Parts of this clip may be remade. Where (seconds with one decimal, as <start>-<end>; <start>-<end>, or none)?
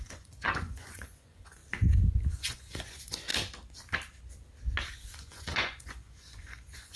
0.0-1.6; 2.3-3.3; 4.9-7.0